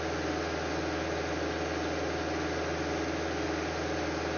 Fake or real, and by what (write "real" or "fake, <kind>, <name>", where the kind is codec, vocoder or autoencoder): real